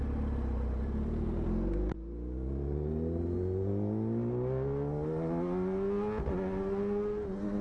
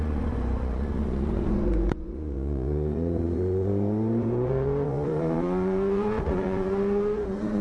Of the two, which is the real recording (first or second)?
first